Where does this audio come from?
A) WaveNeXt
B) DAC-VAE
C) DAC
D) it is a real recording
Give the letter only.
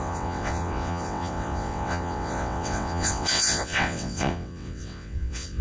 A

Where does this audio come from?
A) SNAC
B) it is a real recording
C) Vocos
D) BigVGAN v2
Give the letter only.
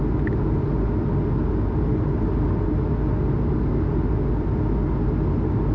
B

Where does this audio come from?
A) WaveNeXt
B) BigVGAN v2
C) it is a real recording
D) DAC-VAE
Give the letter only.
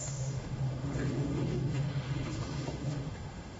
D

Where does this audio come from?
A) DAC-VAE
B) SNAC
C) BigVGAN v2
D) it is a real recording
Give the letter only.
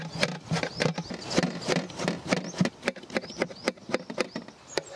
D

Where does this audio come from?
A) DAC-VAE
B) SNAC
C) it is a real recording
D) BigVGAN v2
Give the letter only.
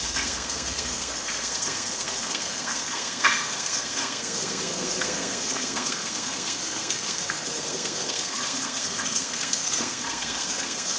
B